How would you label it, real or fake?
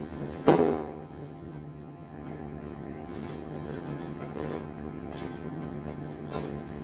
fake